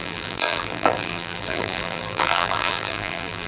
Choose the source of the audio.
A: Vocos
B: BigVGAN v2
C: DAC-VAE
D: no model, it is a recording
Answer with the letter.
B